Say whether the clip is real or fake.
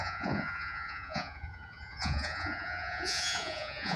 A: fake